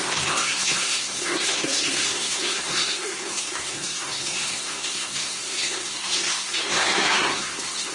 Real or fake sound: fake